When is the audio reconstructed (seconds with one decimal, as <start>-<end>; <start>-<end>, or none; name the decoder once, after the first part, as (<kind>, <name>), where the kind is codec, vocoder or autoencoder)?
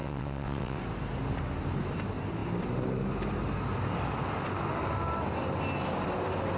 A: 0.0-0.8 (vocoder, WaveNeXt)